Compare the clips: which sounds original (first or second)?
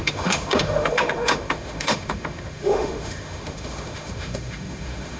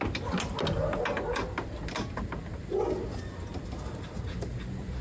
second